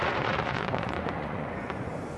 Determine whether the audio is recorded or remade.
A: remade